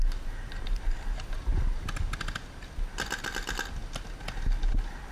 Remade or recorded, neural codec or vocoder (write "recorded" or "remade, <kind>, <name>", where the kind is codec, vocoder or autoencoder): recorded